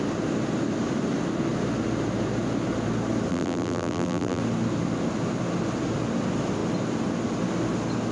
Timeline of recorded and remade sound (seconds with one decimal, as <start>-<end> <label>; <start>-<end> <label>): 0.0-3.3 recorded; 3.3-4.4 remade; 4.4-8.1 recorded